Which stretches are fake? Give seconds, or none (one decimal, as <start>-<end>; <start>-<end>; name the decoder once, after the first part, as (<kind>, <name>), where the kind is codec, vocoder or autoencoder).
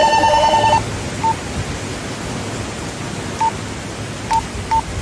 0.0-0.7 (autoencoder, DAC-VAE)